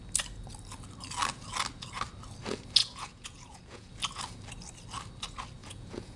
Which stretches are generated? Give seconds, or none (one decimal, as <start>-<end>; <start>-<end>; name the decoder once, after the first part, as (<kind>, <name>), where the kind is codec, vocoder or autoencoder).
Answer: 2.8-3.9 (vocoder, Vocos); 5.6-6.2